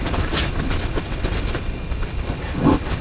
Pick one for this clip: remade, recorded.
recorded